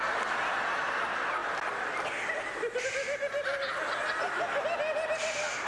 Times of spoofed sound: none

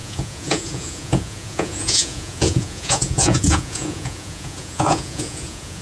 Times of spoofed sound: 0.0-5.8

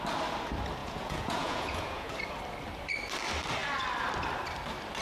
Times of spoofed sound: 0.8-2.1